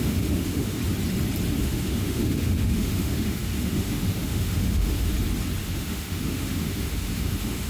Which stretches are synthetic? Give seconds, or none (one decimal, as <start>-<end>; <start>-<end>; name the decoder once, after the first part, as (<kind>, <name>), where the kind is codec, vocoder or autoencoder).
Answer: 0.0-0.8 (autoencoder, DAC-VAE); 1.6-5.1; 5.6-7.7